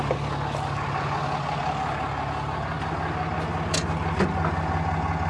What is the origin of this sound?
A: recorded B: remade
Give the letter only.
A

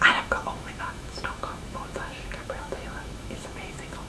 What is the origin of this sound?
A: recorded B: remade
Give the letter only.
B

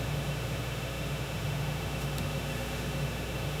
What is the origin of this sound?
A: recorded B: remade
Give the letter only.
B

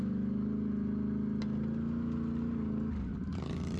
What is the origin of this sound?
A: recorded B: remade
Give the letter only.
A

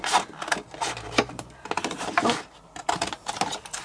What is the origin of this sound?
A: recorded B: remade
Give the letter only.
A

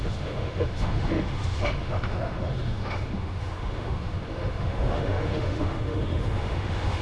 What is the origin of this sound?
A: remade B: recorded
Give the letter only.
A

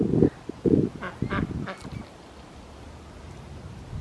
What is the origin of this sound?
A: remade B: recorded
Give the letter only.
B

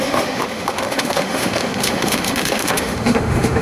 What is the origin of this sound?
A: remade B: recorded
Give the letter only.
A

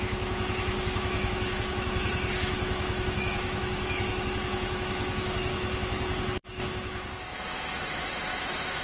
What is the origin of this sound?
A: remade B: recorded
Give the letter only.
A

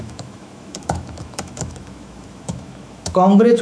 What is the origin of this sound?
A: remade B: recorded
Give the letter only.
A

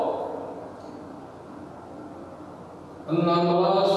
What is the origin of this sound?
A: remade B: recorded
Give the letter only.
B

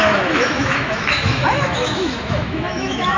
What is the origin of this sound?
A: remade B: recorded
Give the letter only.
A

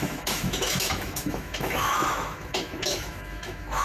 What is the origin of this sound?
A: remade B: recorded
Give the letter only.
A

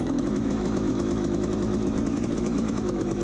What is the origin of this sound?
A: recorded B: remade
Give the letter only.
B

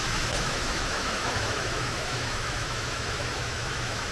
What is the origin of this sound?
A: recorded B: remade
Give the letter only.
B